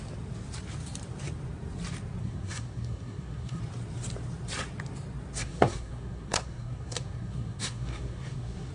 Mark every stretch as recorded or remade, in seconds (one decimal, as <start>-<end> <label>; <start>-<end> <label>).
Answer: 0.0-2.2 recorded; 2.2-3.6 remade; 3.6-5.4 recorded; 5.4-8.7 remade